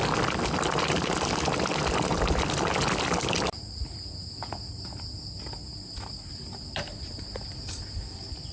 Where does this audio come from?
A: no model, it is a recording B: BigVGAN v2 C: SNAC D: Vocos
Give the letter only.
A